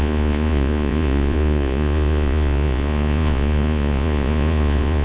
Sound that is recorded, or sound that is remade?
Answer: remade